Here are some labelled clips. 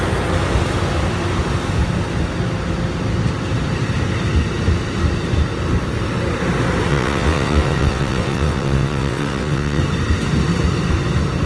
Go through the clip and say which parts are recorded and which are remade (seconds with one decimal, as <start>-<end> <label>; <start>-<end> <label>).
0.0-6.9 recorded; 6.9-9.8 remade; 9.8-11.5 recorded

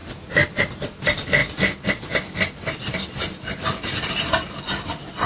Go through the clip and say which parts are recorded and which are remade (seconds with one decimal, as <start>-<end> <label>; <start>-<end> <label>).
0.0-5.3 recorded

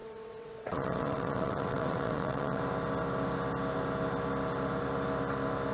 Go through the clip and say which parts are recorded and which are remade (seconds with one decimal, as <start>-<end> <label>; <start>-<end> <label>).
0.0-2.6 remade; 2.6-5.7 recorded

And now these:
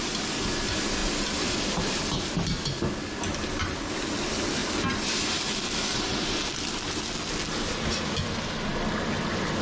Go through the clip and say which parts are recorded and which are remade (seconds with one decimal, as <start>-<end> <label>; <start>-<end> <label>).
0.0-9.6 recorded

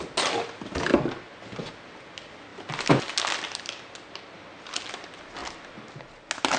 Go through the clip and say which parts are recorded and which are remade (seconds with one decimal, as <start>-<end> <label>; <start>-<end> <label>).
0.0-6.6 recorded

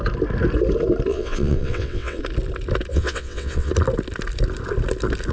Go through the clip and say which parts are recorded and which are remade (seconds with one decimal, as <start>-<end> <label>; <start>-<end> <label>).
0.0-1.1 recorded; 1.1-2.2 remade; 2.2-2.9 recorded; 2.9-3.7 remade; 3.7-5.3 recorded

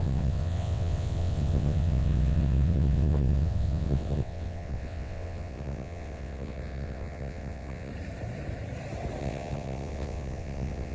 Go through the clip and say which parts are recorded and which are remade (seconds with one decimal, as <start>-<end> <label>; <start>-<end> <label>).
0.0-7.9 remade; 7.9-9.2 recorded; 9.2-10.9 remade

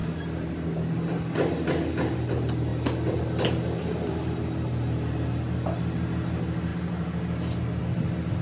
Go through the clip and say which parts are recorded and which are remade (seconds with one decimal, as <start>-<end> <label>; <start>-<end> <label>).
0.0-8.4 recorded